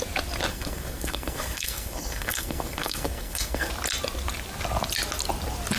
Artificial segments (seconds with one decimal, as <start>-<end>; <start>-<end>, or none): 0.5-3.7